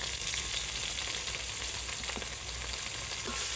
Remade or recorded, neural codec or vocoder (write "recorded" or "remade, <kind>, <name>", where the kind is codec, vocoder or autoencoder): recorded